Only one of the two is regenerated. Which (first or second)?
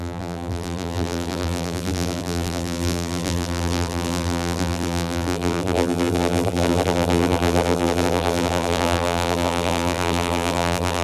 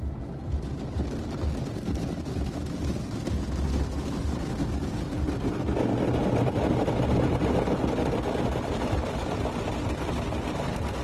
first